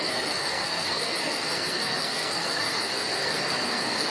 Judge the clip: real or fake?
fake